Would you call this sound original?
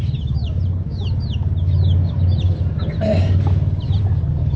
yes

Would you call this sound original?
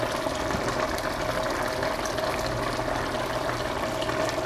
yes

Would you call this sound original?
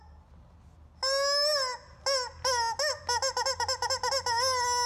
yes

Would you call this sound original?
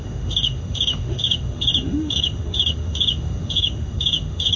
no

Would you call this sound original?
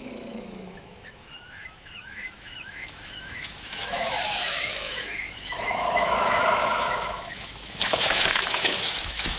no